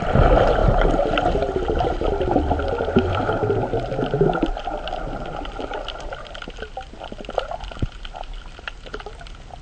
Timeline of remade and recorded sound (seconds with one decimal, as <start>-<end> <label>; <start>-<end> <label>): 0.0-9.6 recorded